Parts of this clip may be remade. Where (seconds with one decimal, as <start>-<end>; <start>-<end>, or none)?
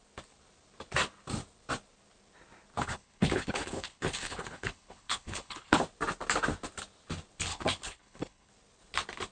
2.8-5.8; 7.5-8.5